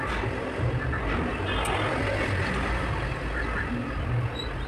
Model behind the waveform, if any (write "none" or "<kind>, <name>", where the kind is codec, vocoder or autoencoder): none